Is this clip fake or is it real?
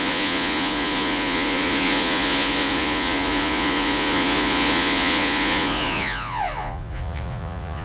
fake